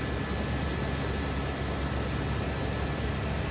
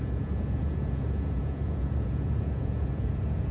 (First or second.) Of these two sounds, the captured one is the first